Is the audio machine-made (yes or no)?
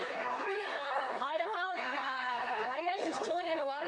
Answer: yes